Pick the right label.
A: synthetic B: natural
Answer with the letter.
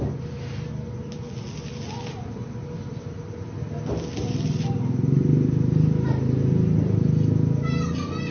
B